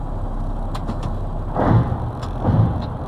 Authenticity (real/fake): real